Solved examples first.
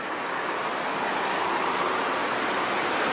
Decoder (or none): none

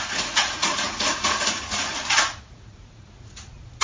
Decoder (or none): vocoder, Vocos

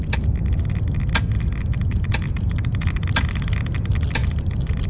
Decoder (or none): none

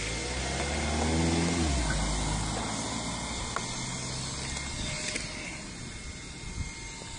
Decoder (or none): none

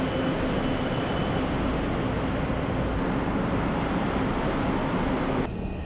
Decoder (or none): none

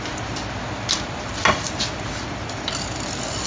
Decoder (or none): none